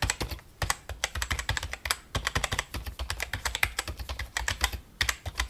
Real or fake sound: real